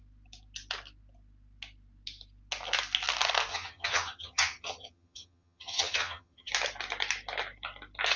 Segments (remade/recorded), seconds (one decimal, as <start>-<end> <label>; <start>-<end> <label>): 0.0-3.5 recorded; 3.5-6.5 remade; 6.5-8.2 recorded